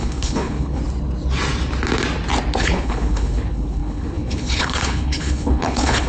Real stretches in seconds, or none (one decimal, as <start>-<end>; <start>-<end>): 0.8-2.6